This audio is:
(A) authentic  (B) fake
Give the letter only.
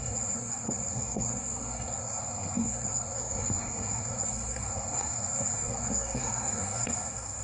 B